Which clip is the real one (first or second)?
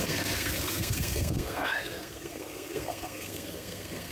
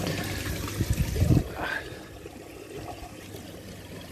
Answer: second